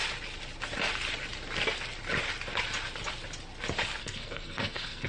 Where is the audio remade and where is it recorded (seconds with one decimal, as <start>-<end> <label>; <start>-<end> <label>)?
0.0-4.0 recorded; 4.0-5.1 remade